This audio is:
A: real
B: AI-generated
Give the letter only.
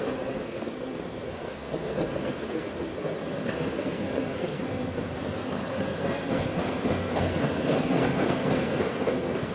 B